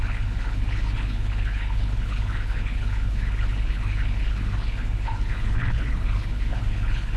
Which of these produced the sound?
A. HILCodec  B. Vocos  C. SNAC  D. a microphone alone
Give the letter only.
A